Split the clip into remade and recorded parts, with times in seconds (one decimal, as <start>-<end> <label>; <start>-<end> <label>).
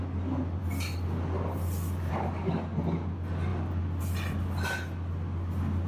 0.0-5.9 recorded